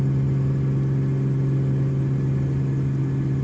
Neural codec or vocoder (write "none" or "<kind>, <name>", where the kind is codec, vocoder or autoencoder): none